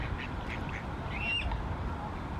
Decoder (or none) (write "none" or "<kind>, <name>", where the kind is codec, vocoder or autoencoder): none